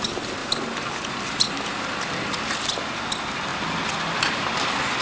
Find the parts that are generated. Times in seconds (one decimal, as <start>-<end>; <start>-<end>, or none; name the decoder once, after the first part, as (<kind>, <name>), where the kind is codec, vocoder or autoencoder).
none